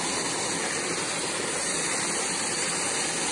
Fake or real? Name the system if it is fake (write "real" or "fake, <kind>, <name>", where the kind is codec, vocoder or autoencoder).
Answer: real